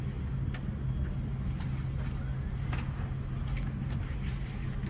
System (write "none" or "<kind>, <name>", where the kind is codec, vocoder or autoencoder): none